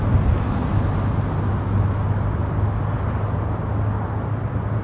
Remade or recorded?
recorded